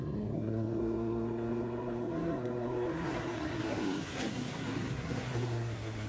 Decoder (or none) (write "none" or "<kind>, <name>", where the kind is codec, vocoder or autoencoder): codec, SNAC